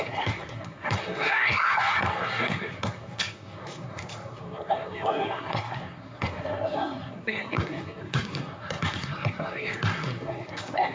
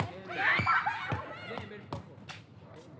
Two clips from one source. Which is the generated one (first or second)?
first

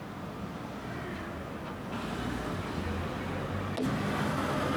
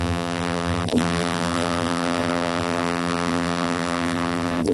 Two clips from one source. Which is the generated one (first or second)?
second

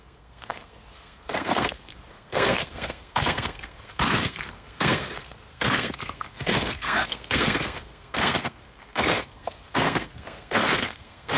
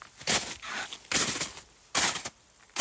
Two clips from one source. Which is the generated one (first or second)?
first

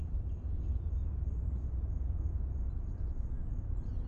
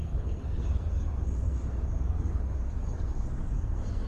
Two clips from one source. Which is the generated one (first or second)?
second